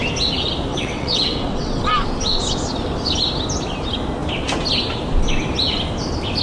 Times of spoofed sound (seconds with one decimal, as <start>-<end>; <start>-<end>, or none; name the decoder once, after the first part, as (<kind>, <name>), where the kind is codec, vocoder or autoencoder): 0.7-1.8 (vocoder, WaveNeXt)